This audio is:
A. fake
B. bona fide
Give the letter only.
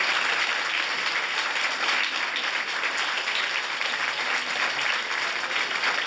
B